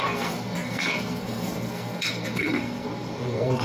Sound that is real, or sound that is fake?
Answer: fake